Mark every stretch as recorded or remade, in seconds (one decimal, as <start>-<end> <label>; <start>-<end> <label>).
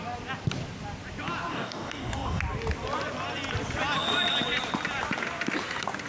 0.0-1.5 recorded; 1.5-2.4 remade; 2.4-6.1 recorded